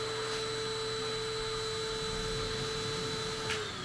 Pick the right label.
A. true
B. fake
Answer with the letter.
A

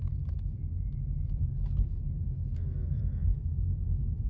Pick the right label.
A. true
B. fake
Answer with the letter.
B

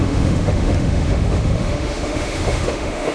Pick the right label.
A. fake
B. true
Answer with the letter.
A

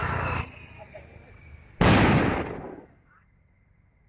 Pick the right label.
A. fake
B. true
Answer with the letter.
B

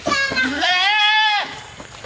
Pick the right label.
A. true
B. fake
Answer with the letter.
A